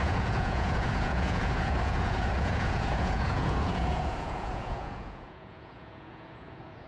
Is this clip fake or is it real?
fake